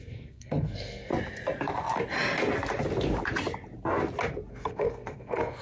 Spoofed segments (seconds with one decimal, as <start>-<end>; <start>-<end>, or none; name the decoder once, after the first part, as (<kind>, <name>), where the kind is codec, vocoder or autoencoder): 0.0-1.1 (codec, SNAC); 4.5-5.6